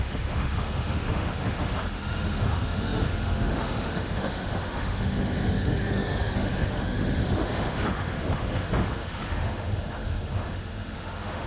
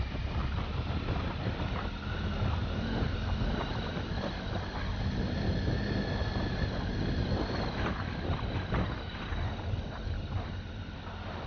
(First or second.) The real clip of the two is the second